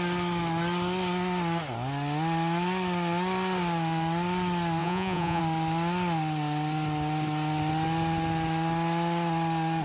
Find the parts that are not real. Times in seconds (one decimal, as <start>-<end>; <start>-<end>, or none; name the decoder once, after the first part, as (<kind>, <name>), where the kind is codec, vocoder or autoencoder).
4.8-5.4 (vocoder, Vocos)